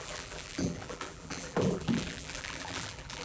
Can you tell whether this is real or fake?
fake